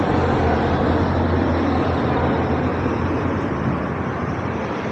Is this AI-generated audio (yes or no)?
no